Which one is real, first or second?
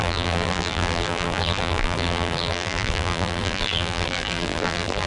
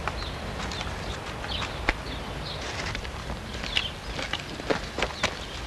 second